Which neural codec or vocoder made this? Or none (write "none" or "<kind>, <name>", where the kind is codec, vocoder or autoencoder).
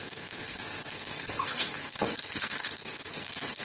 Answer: codec, SNAC